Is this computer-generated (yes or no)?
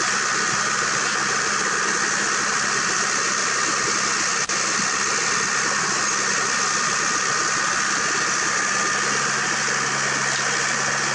no